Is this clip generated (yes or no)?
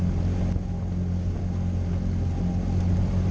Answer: no